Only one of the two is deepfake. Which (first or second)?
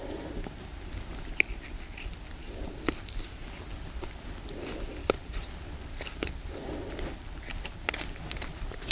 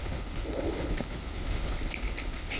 second